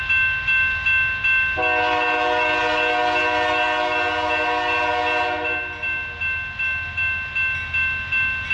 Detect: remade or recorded recorded